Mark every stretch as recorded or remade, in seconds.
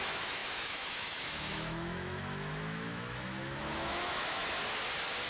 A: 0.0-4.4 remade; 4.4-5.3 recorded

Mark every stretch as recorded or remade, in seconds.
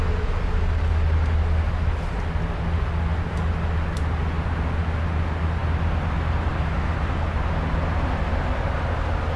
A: 0.0-6.5 recorded; 6.5-7.1 remade; 7.1-9.4 recorded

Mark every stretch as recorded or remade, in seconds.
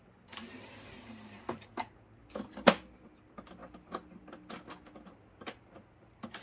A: 0.0-6.4 recorded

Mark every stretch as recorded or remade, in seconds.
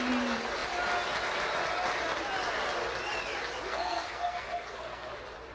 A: 0.0-3.7 recorded; 3.7-5.1 remade; 5.1-5.5 recorded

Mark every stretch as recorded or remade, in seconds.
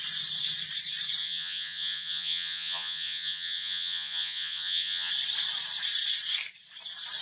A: 0.0-1.2 recorded; 1.2-5.1 remade; 5.1-7.2 recorded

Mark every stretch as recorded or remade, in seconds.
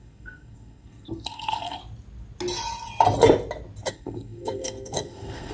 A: 0.0-1.8 remade; 1.8-3.9 recorded; 3.9-5.5 remade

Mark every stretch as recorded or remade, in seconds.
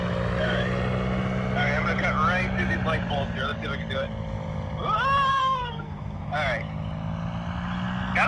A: 0.0-5.3 recorded; 5.3-6.2 remade; 6.2-8.3 recorded